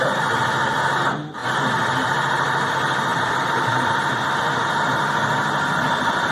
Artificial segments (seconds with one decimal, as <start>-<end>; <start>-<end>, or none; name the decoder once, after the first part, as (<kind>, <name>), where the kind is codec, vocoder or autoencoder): 3.1-4.1 (vocoder, BigVGAN v2)